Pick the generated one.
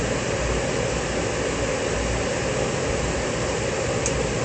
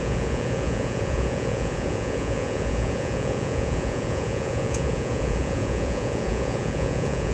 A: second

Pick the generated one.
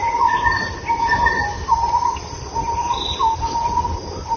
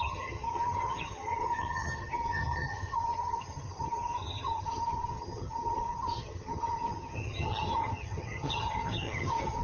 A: second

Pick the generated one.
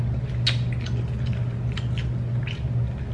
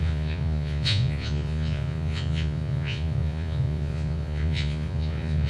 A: second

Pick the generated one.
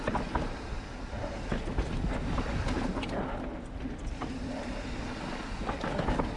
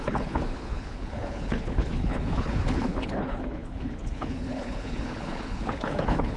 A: second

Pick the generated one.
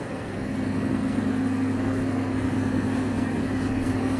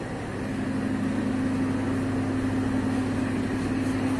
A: first